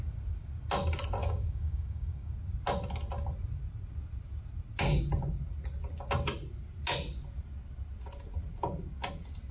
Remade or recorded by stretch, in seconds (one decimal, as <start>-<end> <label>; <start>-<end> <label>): 0.0-1.2 recorded; 1.2-2.3 remade; 2.3-9.5 recorded